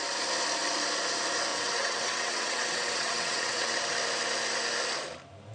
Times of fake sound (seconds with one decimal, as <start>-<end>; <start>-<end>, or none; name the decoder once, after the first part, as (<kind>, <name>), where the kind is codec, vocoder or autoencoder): 1.5-3.7 (vocoder, WaveNeXt)

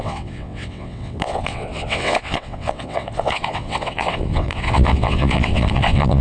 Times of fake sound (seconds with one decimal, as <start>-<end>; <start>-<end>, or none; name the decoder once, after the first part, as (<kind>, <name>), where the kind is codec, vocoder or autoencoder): 0.0-6.2 (vocoder, WaveNeXt)

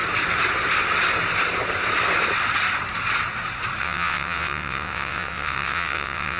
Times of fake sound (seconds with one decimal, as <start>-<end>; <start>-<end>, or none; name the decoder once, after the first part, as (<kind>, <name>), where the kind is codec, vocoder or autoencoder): 3.8-6.4 (vocoder, WaveNeXt)

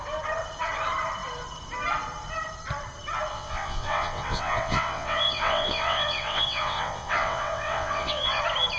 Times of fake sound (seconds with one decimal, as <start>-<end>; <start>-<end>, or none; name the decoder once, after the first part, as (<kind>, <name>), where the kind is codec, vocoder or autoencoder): 3.3-8.4 (vocoder, WaveNeXt)

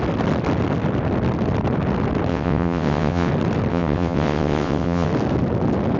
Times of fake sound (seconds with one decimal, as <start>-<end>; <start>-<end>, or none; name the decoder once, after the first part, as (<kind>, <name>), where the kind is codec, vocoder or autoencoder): 2.3-3.3 (vocoder, WaveNeXt); 3.7-5.1